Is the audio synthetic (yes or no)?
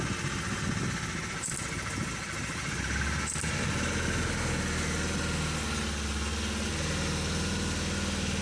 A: no